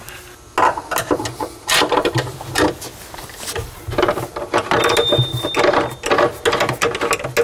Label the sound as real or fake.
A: real